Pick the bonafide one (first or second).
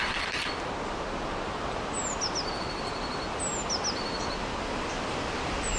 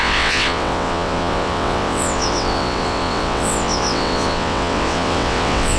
first